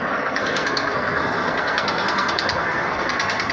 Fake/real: fake